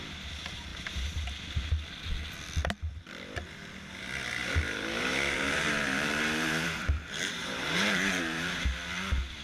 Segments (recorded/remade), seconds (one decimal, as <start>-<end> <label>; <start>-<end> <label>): 0.0-4.4 recorded; 4.4-8.7 remade; 8.7-9.4 recorded